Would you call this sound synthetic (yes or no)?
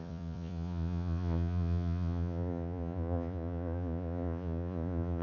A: yes